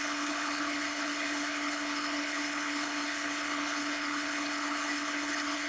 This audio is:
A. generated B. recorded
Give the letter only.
A